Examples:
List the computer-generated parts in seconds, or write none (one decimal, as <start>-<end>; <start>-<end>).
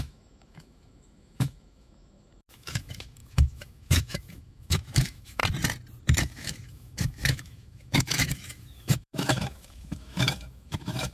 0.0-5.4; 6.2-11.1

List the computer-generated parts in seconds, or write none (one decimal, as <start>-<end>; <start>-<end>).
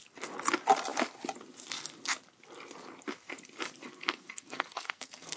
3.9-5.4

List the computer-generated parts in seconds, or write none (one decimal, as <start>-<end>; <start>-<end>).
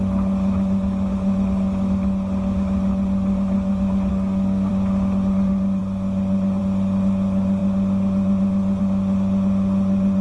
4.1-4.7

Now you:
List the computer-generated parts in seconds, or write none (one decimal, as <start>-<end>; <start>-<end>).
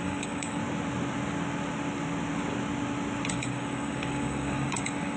0.0-0.6; 3.3-5.2